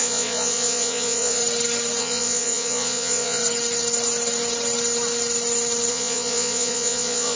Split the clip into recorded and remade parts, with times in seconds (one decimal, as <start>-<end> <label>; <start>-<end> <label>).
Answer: 0.0-1.4 remade; 1.4-2.0 recorded; 2.0-3.4 remade; 3.4-5.9 recorded; 5.9-7.4 remade